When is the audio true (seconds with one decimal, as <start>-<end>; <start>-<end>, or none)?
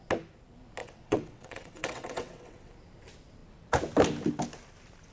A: 0.0-0.8; 2.7-5.1